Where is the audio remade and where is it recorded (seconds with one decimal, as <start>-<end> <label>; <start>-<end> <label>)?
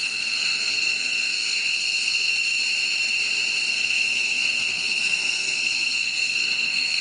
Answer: 0.0-2.3 remade; 2.3-3.7 recorded; 3.7-7.0 remade